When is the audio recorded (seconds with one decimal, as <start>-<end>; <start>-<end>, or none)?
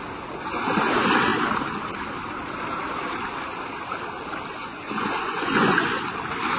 0.0-4.6; 6.0-6.6